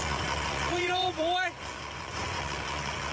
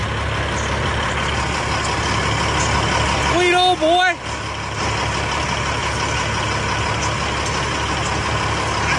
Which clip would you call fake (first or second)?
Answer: first